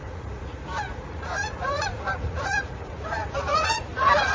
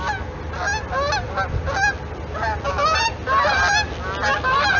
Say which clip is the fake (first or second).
first